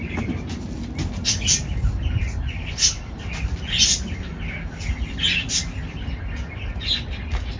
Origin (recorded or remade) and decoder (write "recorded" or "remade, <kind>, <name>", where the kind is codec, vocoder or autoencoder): recorded